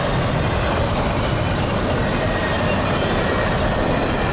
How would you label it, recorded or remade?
recorded